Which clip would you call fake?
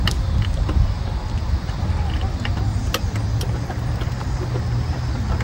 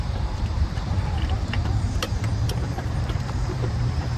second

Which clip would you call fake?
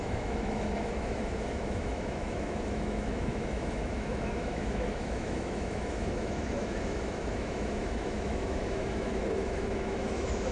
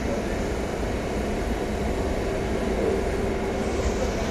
first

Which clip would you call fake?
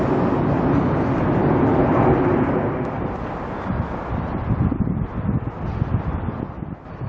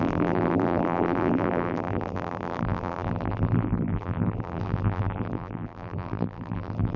second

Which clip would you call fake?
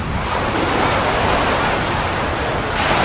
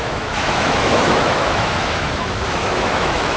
second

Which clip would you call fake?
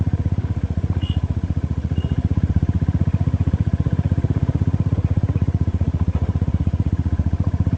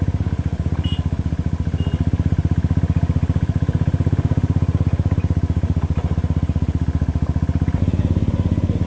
first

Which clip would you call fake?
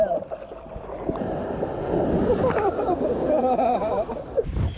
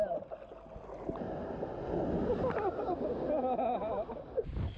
first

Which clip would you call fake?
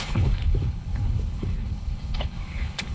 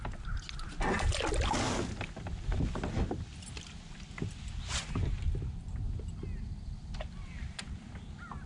first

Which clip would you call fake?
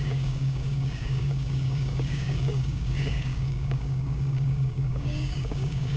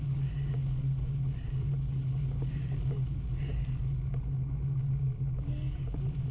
first